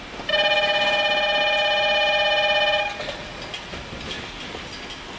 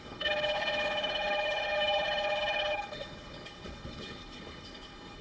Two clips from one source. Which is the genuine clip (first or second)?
first